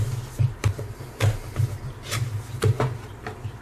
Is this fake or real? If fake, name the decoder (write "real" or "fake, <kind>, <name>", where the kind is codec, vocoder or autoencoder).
real